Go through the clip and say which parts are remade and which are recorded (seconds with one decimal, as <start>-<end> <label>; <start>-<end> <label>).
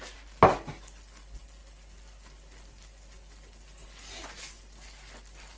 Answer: 0.0-5.6 recorded